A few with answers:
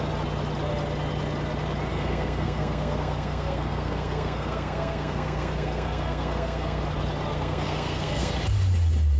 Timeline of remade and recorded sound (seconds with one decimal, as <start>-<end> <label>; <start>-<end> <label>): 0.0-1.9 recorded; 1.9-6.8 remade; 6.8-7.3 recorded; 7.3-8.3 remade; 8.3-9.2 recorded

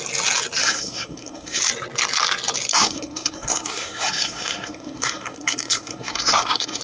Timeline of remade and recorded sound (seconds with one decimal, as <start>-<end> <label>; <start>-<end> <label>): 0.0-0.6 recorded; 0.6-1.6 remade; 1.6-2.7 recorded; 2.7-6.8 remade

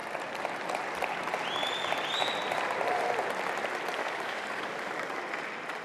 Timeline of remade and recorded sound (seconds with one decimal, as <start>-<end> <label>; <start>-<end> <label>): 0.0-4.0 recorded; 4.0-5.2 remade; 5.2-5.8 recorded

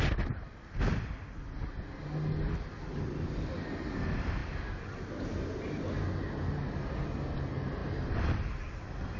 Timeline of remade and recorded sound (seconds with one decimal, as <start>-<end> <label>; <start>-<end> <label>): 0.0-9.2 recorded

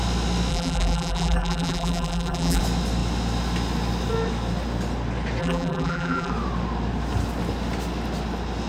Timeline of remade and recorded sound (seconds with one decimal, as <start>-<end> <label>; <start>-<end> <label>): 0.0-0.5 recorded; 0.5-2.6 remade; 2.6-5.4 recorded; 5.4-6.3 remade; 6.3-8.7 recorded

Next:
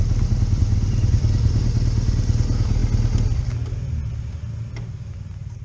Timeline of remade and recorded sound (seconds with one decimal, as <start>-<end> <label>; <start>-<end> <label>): 0.0-5.6 recorded

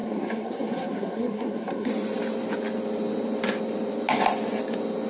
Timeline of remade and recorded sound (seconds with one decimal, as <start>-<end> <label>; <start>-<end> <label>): 0.0-1.9 remade; 1.9-5.1 recorded